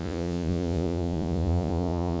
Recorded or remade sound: remade